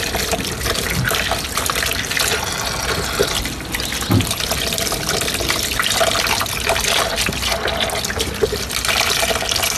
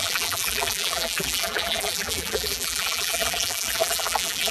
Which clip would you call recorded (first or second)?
first